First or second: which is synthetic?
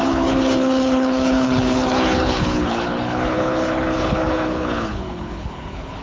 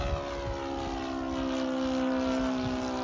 first